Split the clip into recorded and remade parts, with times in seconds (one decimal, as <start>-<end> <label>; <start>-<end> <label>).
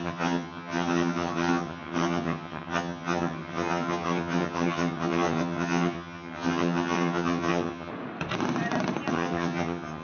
0.0-7.9 remade; 7.9-9.1 recorded; 9.1-10.0 remade